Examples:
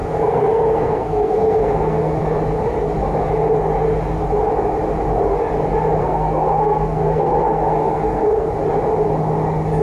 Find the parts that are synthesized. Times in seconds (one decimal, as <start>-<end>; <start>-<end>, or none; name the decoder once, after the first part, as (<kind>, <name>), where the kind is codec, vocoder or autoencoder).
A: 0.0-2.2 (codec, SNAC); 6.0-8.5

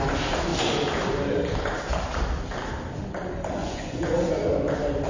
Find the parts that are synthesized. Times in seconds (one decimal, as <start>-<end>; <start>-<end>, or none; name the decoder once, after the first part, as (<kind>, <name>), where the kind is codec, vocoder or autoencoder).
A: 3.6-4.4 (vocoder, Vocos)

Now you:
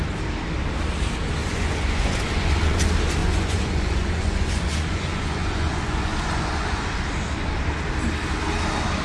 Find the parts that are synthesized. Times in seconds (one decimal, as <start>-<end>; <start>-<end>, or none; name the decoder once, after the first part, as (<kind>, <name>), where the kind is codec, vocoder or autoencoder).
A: 1.4-2.8 (vocoder, Vocos); 3.2-7.0

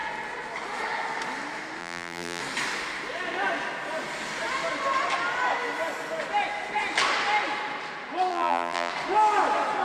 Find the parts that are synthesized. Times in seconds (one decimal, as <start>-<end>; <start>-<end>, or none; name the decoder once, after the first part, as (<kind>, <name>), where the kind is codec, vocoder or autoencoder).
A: 1.8-2.4 (vocoder, BigVGAN v2); 8.3-8.9

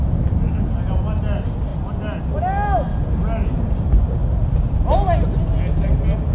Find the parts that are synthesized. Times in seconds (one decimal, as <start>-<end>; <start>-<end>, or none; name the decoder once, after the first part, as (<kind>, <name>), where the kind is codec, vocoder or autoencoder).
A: none

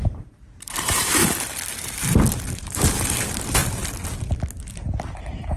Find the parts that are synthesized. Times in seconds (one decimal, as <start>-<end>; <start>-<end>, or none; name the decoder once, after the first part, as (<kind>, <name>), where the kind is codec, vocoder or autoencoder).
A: 0.0-1.2 (vocoder, BigVGAN v2); 2.6-3.6

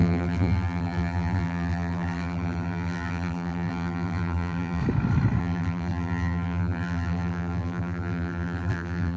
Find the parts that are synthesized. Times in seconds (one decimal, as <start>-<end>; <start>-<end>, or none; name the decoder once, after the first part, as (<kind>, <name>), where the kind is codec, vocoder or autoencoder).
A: 0.0-4.8 (vocoder, BigVGAN v2); 5.4-9.2

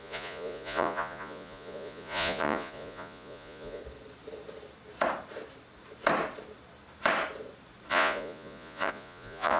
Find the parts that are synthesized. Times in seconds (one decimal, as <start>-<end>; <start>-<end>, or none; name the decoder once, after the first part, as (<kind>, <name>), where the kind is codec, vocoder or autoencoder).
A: 0.0-3.8 (vocoder, Vocos); 7.9-9.6